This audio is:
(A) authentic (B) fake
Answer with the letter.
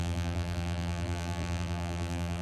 B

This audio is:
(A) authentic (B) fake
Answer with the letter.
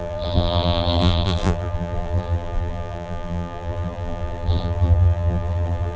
B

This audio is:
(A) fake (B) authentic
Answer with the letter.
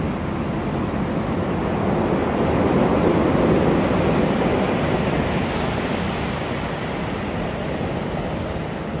B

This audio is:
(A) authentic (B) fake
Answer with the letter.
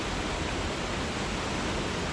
A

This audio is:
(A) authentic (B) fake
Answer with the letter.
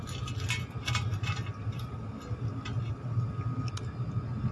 A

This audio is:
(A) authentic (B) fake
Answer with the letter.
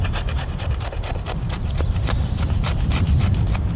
B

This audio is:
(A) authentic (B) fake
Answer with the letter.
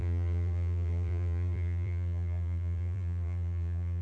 B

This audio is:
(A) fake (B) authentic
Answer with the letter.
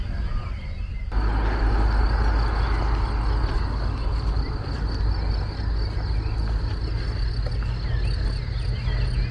B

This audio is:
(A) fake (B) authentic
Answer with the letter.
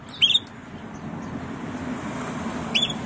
B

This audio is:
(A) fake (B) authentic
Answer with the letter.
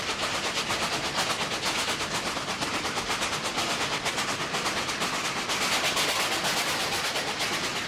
B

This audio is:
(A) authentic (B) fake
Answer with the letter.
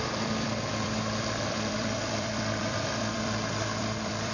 B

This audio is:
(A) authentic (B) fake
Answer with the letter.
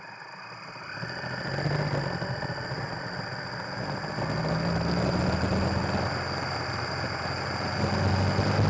A